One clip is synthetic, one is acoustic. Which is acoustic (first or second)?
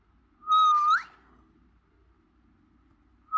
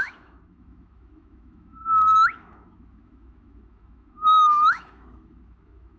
first